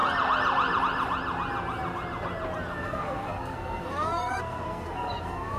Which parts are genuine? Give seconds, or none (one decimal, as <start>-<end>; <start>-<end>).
0.0-2.8